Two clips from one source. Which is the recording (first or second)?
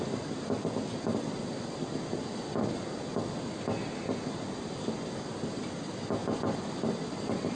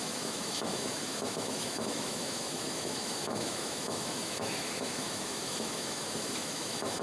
first